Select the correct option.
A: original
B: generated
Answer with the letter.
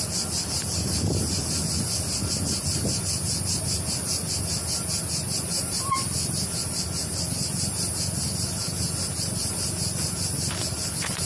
A